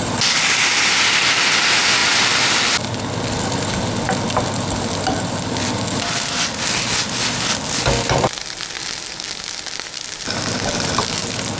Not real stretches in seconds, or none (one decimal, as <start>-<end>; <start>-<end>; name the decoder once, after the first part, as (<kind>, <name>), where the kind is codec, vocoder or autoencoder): 2.0-2.6 (vocoder, BigVGAN v2)